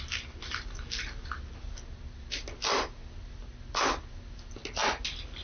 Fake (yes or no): no